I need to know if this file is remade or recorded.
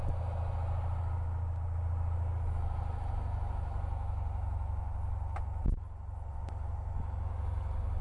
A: recorded